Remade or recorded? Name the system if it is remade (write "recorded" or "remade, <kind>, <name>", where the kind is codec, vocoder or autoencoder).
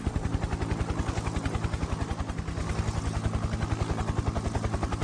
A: recorded